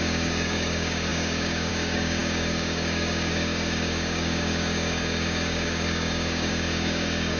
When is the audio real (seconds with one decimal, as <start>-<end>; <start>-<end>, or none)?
none